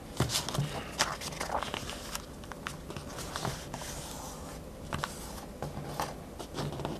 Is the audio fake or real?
real